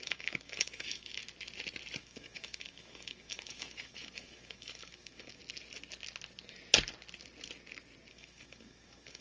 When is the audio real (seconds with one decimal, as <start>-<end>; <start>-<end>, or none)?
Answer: 1.2-2.0; 5.4-8.1